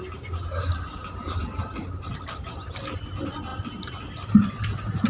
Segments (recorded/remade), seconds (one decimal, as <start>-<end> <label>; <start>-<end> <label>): 0.0-1.4 recorded; 1.4-2.2 remade; 2.2-3.5 recorded; 3.5-4.3 remade; 4.3-5.1 recorded